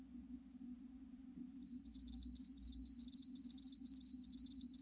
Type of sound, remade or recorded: recorded